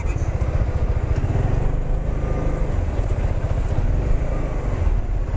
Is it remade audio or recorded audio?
recorded